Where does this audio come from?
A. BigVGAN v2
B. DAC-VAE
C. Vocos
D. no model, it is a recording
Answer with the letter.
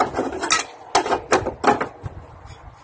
D